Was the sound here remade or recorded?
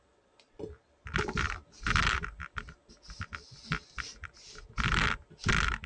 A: recorded